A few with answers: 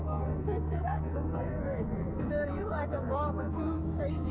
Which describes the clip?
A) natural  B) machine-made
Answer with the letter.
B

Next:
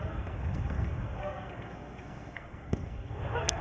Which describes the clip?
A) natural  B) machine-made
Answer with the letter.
B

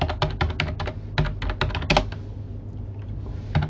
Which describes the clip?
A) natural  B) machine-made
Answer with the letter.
A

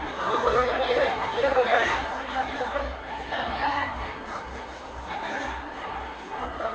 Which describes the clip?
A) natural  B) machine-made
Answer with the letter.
B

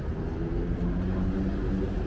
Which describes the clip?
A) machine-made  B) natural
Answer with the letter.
B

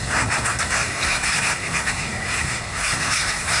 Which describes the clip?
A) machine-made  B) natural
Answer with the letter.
A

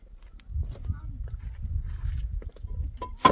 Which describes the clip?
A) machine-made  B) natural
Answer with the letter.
B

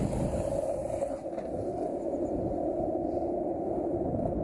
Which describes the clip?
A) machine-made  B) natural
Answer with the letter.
B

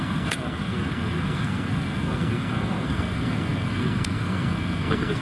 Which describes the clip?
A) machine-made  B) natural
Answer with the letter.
A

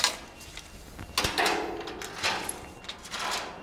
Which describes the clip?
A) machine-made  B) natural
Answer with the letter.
B